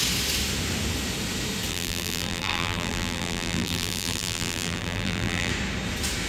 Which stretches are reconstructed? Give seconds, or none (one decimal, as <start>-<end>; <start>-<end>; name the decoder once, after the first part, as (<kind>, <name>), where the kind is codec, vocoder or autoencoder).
1.7-5.5 (vocoder, BigVGAN v2)